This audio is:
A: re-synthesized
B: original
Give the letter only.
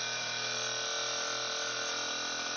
B